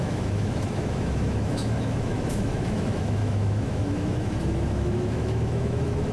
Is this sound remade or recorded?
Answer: remade